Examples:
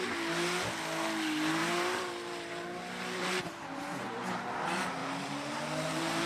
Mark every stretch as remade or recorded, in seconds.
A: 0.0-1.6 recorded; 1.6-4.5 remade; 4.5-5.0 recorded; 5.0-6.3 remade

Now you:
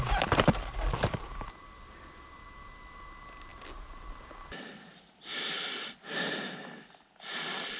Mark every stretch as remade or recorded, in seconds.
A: 0.0-7.8 recorded